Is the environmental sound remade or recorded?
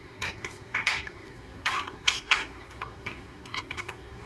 remade